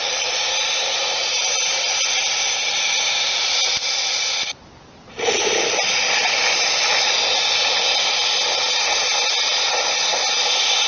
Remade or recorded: recorded